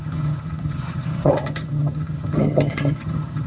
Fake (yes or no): yes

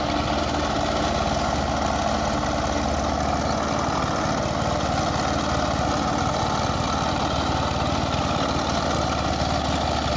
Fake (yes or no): no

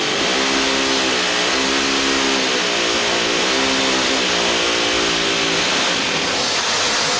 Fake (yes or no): no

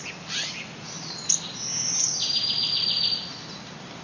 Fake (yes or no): no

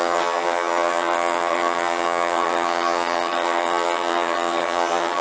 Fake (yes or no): yes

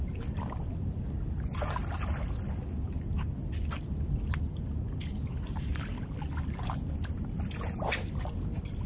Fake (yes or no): no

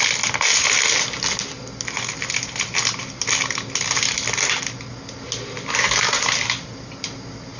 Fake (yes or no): no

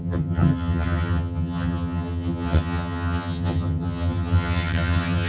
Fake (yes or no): yes